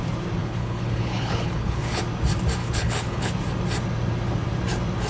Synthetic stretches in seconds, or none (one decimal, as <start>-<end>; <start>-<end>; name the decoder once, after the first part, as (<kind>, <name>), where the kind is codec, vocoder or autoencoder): 0.4-2.0 (codec, HILCodec); 2.6-3.3